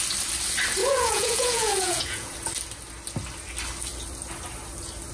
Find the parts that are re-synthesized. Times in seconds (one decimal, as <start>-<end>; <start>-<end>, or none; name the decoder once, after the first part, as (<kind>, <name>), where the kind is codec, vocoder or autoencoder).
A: 0.8-2.3 (vocoder, Vocos)